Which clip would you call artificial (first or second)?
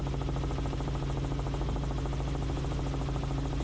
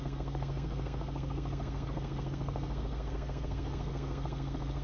second